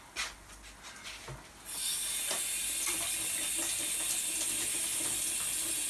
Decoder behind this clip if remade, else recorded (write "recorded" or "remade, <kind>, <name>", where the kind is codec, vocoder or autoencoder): recorded